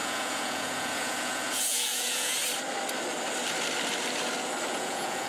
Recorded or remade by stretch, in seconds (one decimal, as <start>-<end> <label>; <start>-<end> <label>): 0.0-2.4 remade; 2.4-4.7 recorded; 4.7-5.3 remade